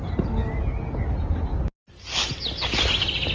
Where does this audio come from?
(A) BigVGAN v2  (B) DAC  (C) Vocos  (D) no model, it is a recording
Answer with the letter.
D